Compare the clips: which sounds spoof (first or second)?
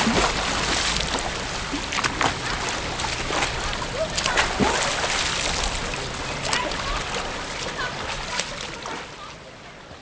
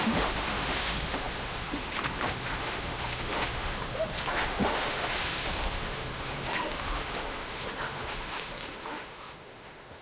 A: second